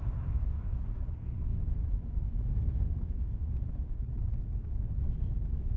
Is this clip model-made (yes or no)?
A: yes